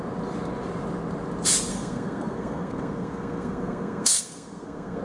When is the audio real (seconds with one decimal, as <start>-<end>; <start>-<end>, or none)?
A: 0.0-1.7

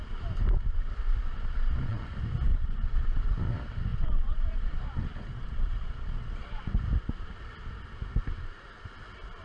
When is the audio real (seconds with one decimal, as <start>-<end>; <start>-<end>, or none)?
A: 0.0-1.2; 2.1-2.5; 3.2-3.9; 6.7-9.4

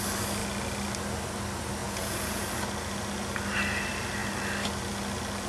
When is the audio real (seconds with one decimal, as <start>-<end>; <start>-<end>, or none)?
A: 0.0-1.8; 2.4-5.5

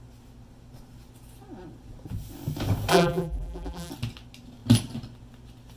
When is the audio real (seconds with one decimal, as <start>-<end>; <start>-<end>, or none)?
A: 0.0-2.9; 3.9-5.8